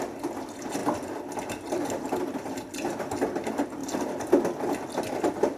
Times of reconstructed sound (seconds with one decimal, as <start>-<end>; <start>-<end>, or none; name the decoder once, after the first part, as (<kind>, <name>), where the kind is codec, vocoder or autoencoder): none